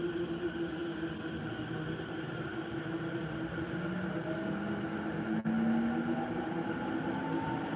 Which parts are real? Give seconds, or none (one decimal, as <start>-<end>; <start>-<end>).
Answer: 0.0-7.8